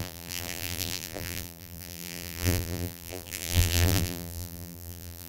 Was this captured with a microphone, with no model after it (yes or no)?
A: no